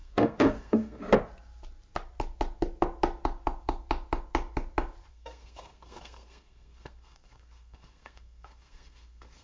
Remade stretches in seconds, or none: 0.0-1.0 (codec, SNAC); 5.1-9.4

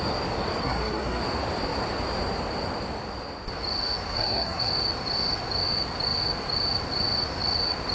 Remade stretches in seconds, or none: 0.6-1.2 (codec, SNAC); 4.1-4.7